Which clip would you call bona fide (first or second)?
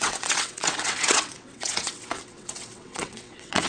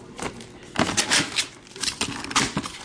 second